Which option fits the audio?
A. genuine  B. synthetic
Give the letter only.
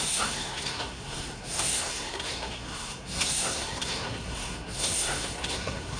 B